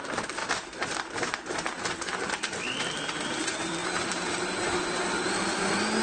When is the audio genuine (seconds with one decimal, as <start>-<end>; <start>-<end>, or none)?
0.0-0.4; 2.6-3.8; 5.1-6.0